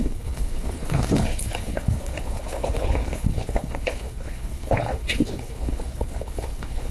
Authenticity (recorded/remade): remade